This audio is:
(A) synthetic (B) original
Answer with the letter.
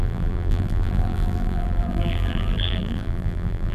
A